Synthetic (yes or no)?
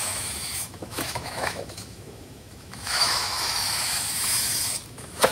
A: yes